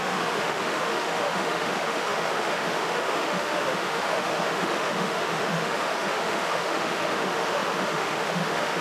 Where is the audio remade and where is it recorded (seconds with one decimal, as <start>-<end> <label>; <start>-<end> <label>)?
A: 0.0-8.8 remade